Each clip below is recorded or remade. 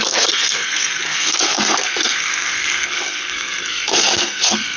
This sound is remade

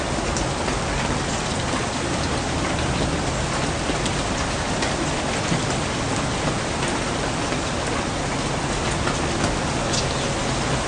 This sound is recorded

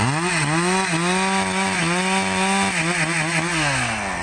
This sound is recorded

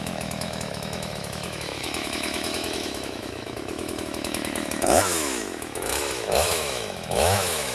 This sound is remade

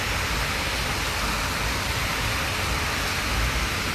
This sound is recorded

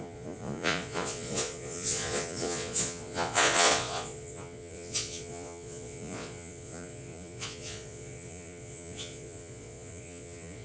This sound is remade